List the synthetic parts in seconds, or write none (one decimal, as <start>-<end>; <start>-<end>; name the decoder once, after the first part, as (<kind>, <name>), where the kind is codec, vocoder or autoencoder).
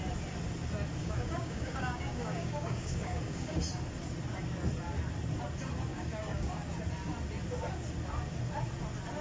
1.0-3.6 (codec, DAC); 5.9-6.5